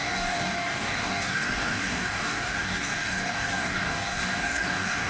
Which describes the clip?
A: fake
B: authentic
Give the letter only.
A